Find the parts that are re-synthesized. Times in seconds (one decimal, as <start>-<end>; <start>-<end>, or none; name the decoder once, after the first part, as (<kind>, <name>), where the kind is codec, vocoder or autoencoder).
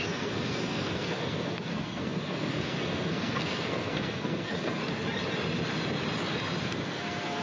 0.0-4.8 (codec, SNAC); 6.6-7.4